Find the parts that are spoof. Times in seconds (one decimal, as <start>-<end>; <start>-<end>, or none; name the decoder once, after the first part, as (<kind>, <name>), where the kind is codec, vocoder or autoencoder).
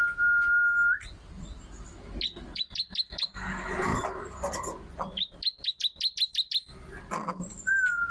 none